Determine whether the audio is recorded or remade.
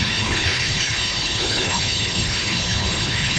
remade